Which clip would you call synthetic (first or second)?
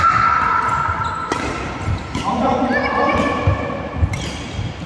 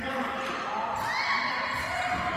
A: first